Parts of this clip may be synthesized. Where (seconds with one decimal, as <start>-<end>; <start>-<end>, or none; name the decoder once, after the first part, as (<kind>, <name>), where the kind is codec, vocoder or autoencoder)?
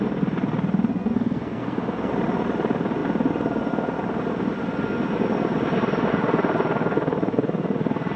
0.9-2.1 (codec, SNAC)